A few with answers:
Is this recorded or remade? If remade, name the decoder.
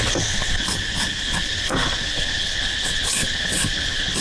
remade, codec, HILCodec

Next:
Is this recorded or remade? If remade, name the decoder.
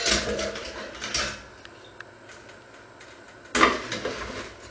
recorded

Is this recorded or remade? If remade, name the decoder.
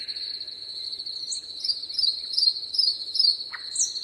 recorded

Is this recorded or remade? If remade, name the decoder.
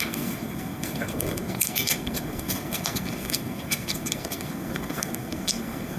remade, codec, SNAC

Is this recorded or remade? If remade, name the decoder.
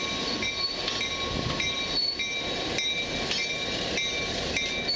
recorded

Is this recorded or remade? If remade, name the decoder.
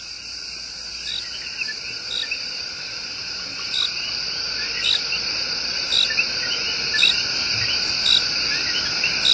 recorded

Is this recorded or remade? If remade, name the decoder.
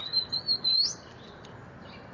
recorded